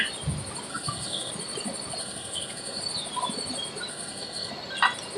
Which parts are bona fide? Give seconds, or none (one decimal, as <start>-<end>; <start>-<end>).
0.0-0.7; 1.3-2.0; 2.8-3.9; 4.5-5.2